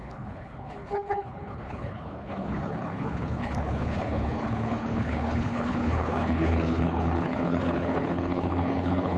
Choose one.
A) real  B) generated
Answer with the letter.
B